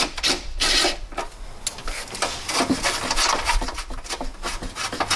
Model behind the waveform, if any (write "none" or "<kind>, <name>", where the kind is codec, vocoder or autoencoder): none